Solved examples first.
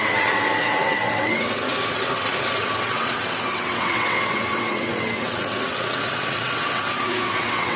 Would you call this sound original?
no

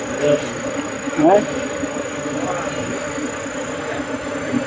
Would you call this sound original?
yes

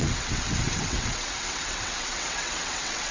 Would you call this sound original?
no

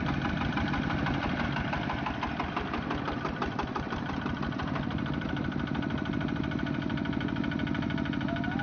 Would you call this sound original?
yes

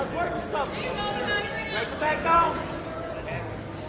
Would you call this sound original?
yes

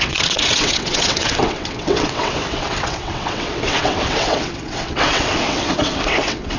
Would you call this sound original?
no